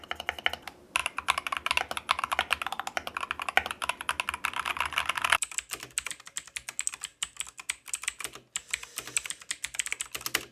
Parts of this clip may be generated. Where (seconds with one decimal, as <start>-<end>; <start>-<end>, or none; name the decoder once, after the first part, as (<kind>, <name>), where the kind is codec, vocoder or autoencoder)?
none